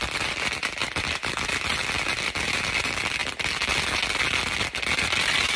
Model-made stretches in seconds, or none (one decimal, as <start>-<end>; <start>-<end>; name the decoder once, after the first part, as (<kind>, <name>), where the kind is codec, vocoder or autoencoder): 0.8-2.3 (vocoder, BigVGAN v2)